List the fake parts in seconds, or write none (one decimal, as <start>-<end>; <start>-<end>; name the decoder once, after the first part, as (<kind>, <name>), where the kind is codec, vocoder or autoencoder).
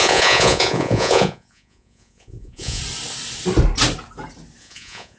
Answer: 0.0-2.8 (vocoder, Vocos); 4.6-5.2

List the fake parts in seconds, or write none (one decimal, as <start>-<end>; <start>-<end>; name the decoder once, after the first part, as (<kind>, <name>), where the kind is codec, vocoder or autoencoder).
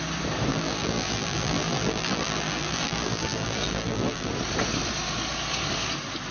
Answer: 0.5-4.3 (vocoder, BigVGAN v2)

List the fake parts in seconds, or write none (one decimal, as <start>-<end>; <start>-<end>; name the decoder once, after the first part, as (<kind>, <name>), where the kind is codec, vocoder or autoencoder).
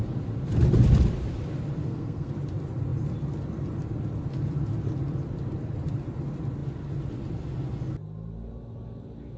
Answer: 1.8-2.3 (codec, SNAC)